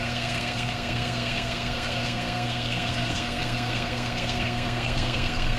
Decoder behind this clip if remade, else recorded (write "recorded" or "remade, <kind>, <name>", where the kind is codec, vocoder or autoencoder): remade, codec, SNAC